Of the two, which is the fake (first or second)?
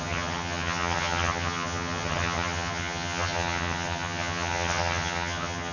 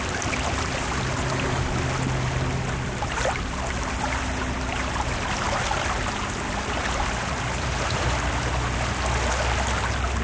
first